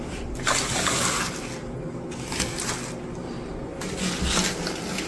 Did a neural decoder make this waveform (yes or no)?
no